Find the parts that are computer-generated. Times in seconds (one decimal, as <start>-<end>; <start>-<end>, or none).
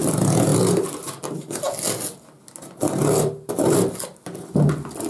none